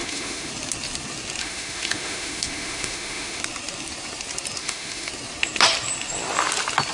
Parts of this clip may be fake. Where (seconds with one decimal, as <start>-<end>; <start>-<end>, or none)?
0.0-0.5; 1.4-3.4; 4.6-5.1